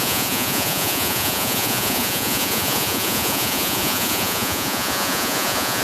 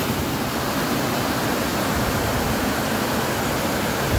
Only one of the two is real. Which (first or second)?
second